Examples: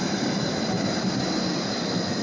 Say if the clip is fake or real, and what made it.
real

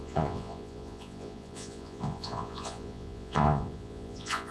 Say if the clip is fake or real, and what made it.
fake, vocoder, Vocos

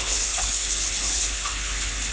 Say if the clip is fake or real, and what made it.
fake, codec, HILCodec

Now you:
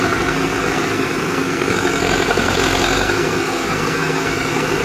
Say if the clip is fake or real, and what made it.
fake, codec, SNAC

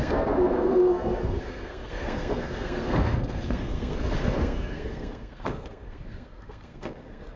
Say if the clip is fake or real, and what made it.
fake, codec, SNAC